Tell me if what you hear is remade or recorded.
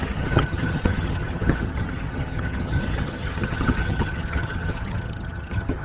remade